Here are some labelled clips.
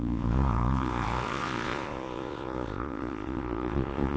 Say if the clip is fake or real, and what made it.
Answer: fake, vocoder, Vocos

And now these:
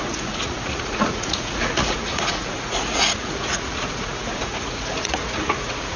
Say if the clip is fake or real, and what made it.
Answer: fake, vocoder, Vocos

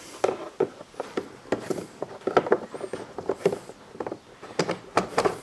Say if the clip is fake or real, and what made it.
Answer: real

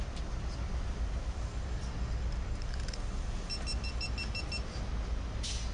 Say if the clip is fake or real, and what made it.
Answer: real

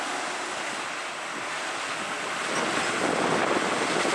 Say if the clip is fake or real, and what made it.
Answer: real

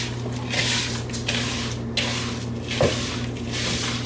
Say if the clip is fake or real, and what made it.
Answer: real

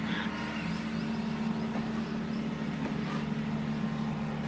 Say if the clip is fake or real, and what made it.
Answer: real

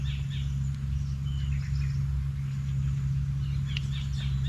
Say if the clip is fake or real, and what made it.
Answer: real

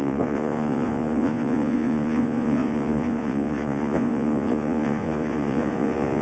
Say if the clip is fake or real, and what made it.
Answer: fake, vocoder, Vocos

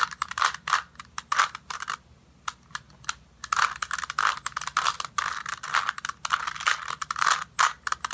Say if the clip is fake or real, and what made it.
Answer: real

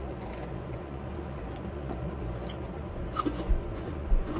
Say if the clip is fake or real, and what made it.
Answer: fake, vocoder, Vocos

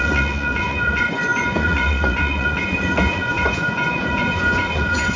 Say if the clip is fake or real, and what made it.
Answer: fake, vocoder, Vocos